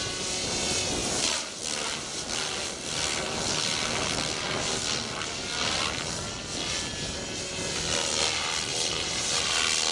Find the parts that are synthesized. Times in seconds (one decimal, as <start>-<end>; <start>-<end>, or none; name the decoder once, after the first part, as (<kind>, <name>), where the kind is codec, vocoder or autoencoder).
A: 1.0-1.6 (vocoder, BigVGAN v2); 8.7-9.4